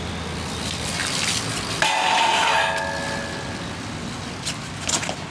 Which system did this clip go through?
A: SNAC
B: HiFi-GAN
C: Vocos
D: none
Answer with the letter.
D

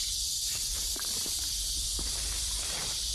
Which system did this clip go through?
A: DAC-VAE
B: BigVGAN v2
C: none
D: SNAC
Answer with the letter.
B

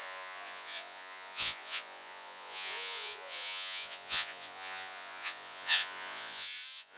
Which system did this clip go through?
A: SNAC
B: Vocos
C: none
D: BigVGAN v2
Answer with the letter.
B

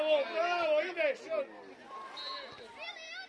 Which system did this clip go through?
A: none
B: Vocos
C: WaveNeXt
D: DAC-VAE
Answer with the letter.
A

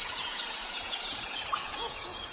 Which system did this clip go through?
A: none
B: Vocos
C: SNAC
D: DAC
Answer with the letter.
B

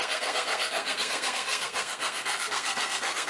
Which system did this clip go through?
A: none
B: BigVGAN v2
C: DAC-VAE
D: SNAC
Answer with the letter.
D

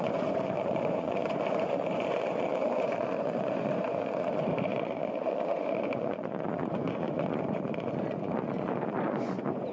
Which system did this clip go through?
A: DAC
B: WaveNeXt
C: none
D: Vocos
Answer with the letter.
D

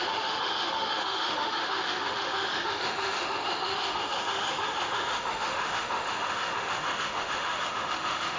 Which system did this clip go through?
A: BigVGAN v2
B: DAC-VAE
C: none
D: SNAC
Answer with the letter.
B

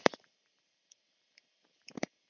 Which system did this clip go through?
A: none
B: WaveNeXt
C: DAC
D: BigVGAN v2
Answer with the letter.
D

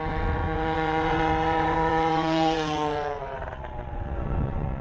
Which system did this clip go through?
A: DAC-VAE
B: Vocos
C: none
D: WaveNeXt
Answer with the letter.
D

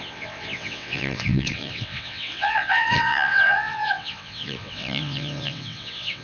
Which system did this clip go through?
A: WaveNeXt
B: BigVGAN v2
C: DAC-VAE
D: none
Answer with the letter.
A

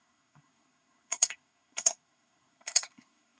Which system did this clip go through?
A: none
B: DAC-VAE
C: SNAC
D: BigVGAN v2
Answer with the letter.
C